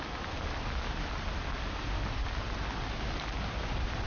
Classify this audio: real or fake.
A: real